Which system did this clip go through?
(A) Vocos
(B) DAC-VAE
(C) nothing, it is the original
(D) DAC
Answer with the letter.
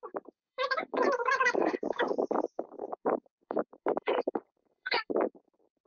D